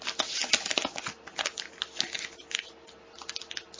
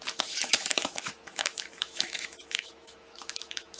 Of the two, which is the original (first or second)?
first